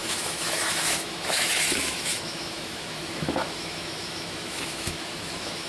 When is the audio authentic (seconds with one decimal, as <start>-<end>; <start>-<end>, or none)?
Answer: none